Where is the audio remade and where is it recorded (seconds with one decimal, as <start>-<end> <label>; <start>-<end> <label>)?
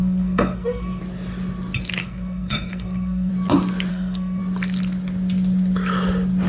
0.0-1.0 remade; 1.0-2.0 recorded; 2.0-3.3 remade; 3.3-3.9 recorded; 3.9-4.4 remade; 4.4-6.5 recorded